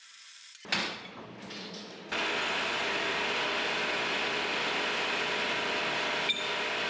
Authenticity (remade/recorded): recorded